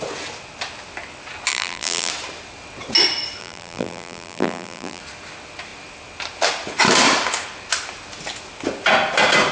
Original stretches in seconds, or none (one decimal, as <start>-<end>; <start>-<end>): 0.0-1.5; 2.1-3.4; 5.0-9.5